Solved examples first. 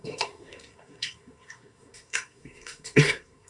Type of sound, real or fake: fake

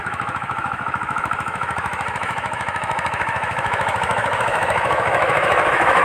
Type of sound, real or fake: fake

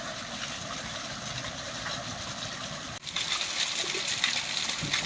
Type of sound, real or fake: real